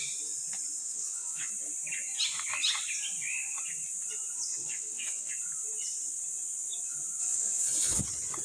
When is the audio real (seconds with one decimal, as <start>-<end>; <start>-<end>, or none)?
0.0-0.8; 1.5-4.5; 5.3-7.2; 8.0-8.4